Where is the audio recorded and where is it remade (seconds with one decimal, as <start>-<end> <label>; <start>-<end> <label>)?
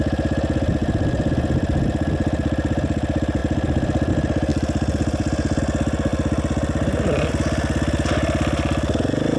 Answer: 0.0-0.8 recorded; 0.8-1.3 remade; 1.3-6.1 recorded; 6.1-7.3 remade; 7.3-9.4 recorded